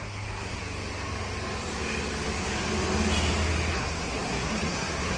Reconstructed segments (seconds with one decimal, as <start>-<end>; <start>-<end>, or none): 0.0-0.6; 3.7-5.2